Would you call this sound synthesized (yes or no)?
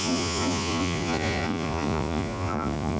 yes